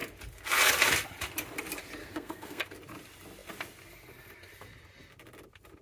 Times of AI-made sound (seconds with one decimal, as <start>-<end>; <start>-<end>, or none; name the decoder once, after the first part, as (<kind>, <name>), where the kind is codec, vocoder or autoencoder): 2.0-2.6 (codec, SNAC)